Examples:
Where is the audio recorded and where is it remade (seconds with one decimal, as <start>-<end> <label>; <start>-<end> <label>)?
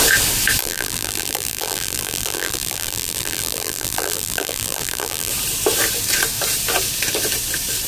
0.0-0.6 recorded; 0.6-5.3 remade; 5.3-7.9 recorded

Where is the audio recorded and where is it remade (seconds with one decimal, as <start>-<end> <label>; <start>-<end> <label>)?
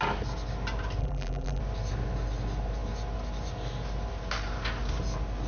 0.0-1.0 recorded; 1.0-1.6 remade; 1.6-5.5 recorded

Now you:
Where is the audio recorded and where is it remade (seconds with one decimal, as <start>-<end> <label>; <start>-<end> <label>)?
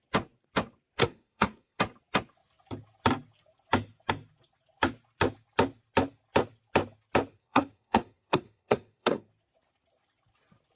0.0-1.0 recorded; 1.0-1.8 remade; 1.8-7.3 recorded; 7.3-9.3 remade; 9.3-10.8 recorded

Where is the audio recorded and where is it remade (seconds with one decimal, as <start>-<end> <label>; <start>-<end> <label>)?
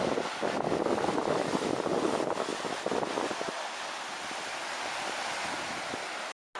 0.0-6.6 recorded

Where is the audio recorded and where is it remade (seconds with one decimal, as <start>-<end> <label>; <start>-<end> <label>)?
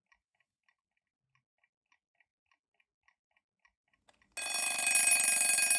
0.0-5.8 recorded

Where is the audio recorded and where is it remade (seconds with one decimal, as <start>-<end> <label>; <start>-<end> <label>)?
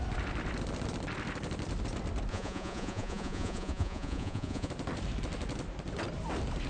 0.0-2.3 recorded; 2.3-4.7 remade; 4.7-6.7 recorded